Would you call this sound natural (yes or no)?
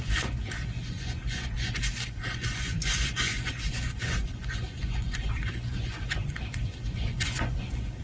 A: no